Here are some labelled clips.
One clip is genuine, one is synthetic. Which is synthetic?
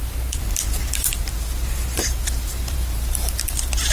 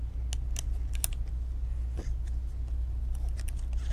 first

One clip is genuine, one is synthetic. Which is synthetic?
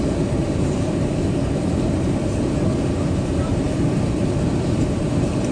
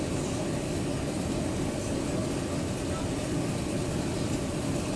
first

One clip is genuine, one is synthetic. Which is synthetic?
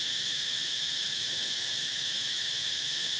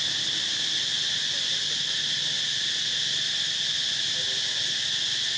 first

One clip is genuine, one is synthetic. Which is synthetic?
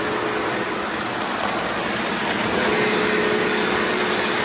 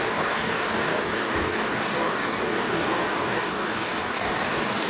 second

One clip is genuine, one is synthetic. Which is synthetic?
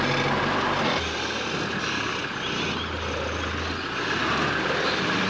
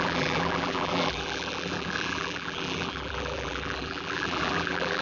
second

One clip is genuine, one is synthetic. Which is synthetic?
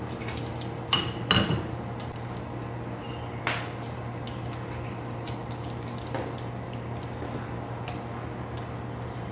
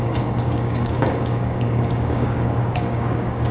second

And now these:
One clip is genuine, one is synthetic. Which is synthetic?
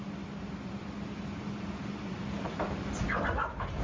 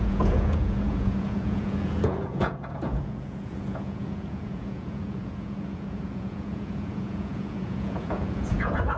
second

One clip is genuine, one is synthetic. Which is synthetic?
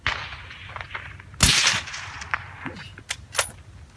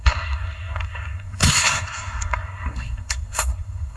second